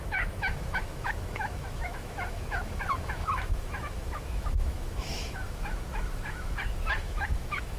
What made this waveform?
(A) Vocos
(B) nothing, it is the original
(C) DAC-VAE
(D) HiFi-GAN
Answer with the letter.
C